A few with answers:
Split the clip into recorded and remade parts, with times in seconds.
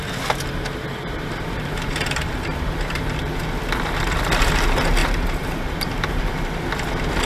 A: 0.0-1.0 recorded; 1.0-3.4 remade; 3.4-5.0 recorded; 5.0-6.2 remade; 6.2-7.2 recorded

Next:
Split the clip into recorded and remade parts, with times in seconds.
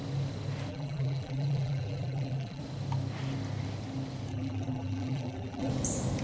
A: 0.0-0.7 recorded; 0.7-2.6 remade; 2.6-4.3 recorded; 4.3-5.7 remade; 5.7-6.2 recorded